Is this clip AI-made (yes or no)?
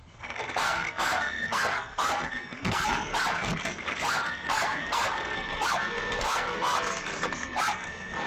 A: yes